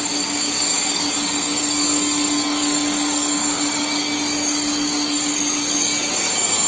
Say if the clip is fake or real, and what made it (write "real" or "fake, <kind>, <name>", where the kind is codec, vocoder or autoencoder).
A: fake, codec, DAC